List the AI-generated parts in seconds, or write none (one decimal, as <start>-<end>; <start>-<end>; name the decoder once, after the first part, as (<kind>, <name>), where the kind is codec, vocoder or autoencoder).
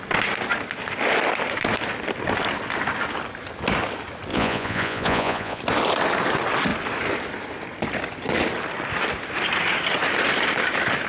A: 4.3-5.6 (vocoder, Vocos)